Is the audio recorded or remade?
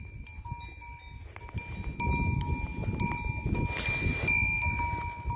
recorded